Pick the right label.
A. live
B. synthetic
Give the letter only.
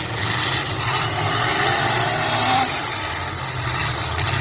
A